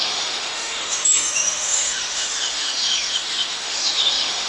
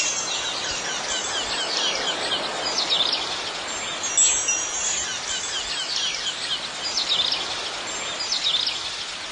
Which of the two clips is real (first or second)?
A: second